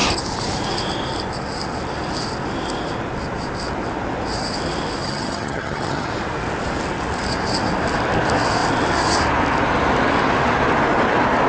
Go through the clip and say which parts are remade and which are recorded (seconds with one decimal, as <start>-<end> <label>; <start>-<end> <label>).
0.0-5.0 recorded; 5.0-6.1 remade; 6.1-11.5 recorded